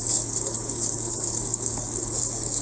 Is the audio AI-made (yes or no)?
yes